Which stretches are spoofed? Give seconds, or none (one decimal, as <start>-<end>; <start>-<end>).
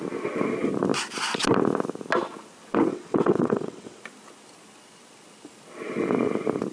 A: 2.9-4.0